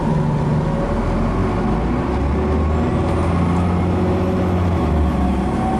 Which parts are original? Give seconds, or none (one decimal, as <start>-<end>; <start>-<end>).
0.0-5.8